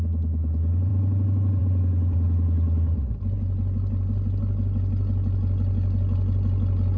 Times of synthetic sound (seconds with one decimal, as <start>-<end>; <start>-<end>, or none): none